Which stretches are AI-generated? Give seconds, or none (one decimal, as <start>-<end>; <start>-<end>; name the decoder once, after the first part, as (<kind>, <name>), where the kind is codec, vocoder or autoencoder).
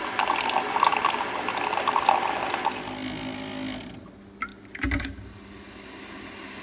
none